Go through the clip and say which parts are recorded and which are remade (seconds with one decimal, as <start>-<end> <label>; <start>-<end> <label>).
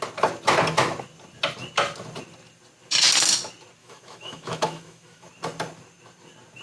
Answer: 0.0-3.8 recorded; 3.8-5.3 remade; 5.3-6.6 recorded